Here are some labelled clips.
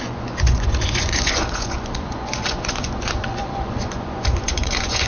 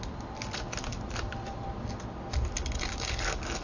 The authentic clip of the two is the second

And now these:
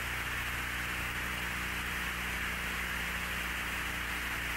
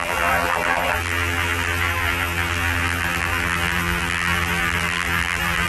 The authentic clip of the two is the first